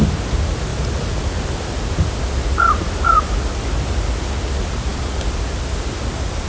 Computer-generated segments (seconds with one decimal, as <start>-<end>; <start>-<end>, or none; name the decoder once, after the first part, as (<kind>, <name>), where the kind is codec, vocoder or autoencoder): none